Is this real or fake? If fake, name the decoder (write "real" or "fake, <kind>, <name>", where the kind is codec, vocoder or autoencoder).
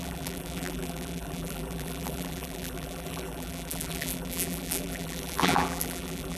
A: fake, vocoder, BigVGAN v2